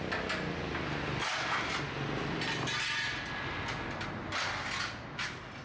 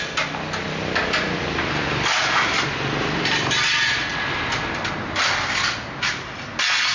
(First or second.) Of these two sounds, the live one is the first